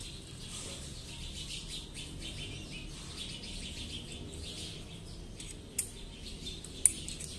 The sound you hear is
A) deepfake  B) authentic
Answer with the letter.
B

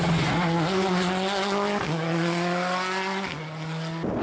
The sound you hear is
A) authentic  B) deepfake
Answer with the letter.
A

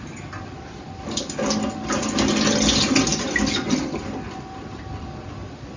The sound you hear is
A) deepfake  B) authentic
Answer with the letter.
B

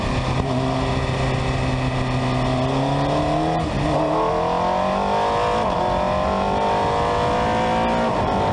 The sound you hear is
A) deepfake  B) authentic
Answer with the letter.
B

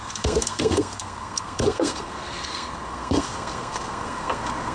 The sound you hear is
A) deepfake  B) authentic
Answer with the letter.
A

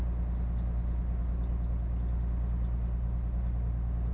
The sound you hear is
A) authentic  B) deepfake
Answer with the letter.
A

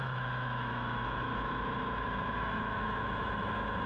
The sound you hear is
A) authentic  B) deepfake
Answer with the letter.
B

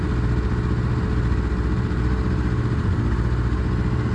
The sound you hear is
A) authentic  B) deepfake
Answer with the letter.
A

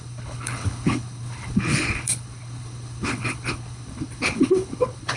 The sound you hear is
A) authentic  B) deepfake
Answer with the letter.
B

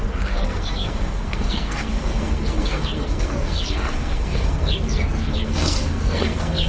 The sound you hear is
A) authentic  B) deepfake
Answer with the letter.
B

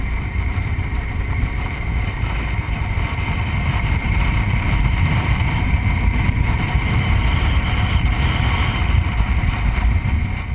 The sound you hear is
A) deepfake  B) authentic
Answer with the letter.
A